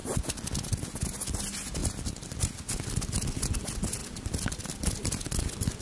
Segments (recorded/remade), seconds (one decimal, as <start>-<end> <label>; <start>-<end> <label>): 0.0-0.8 remade; 0.8-1.8 recorded; 1.8-3.5 remade; 3.5-4.0 recorded; 4.0-4.6 remade; 4.6-5.8 recorded